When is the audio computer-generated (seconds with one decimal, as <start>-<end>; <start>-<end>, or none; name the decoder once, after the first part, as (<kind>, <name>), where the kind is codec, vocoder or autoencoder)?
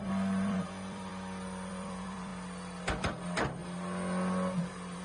0.0-1.1 (vocoder, BigVGAN v2); 1.7-2.3; 3.0-3.6; 4.6-5.0